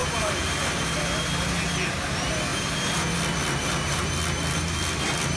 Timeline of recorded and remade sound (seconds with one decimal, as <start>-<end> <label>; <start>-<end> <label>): 0.0-1.6 remade; 1.6-2.5 recorded; 2.5-3.2 remade; 3.2-3.6 recorded; 3.6-4.1 remade; 4.1-5.4 recorded